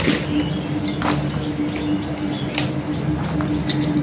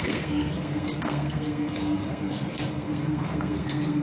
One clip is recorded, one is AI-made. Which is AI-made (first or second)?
second